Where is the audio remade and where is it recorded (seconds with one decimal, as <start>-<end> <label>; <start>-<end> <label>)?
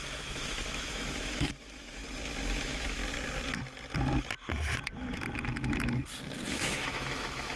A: 0.0-2.0 remade; 2.0-2.6 recorded; 2.6-3.0 remade; 3.0-6.5 recorded; 6.5-7.6 remade